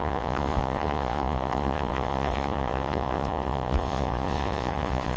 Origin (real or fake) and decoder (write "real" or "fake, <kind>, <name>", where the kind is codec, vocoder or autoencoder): fake, vocoder, Vocos